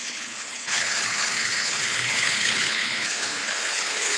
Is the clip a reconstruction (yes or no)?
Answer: yes